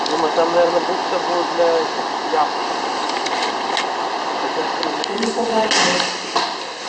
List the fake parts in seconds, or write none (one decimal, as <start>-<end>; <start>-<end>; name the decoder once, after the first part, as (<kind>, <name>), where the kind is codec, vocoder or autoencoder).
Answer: none